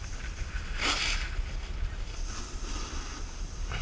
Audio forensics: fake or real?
real